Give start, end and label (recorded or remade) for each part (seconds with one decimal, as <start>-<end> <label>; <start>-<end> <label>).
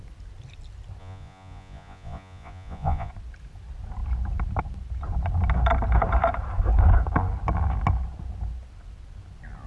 0.0-1.0 recorded; 1.0-3.1 remade; 3.1-9.7 recorded